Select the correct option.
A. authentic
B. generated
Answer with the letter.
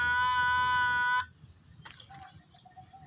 A